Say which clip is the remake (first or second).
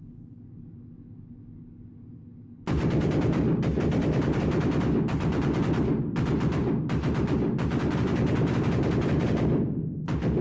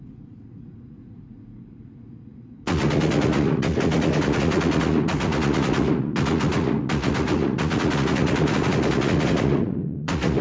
second